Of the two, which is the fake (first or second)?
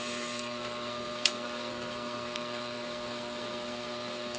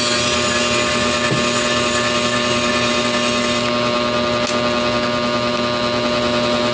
first